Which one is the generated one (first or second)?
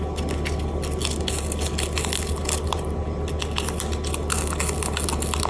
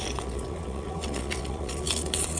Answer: second